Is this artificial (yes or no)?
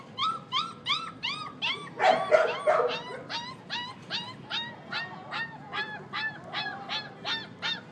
no